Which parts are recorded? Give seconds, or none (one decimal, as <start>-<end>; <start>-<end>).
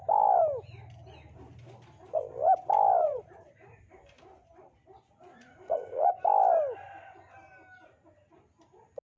0.0-3.0; 3.8-5.3; 6.1-9.2